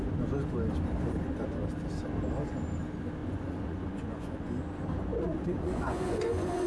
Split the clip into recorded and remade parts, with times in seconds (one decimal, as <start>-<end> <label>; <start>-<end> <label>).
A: 0.0-3.2 recorded; 3.2-4.5 remade; 4.5-5.1 recorded; 5.1-6.7 remade